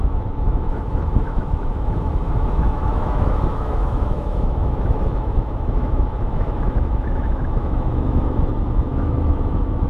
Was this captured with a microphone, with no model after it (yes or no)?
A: no